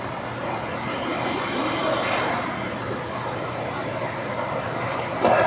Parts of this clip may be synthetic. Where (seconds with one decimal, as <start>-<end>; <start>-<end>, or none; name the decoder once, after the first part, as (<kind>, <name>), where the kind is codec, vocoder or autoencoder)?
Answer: none